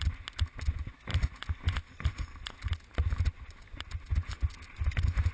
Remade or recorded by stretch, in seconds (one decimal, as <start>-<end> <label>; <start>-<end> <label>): 0.0-5.3 recorded